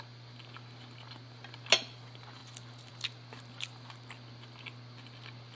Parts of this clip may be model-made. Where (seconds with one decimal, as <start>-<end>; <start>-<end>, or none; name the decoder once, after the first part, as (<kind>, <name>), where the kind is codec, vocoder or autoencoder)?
none